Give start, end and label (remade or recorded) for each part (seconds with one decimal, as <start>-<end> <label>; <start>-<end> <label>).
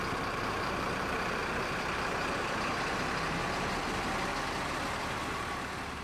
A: 0.0-1.4 remade; 1.4-5.0 recorded; 5.0-6.0 remade